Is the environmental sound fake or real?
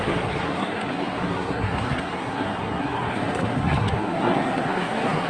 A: fake